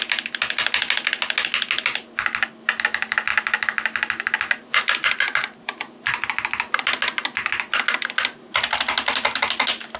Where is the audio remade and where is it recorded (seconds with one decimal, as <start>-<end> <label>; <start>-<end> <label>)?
0.0-10.0 recorded